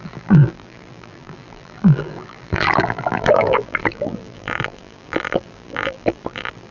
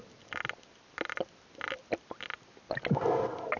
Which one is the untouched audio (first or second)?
second